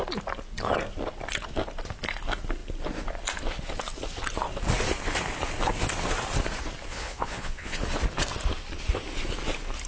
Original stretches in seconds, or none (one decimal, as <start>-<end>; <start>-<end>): 0.0-6.9; 7.8-9.9